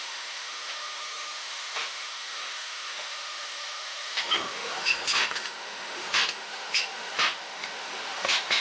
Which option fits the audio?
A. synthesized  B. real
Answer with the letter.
A